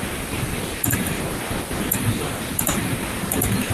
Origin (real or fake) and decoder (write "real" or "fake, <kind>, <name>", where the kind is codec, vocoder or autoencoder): fake, vocoder, BigVGAN v2